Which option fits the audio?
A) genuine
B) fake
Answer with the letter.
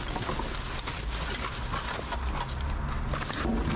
A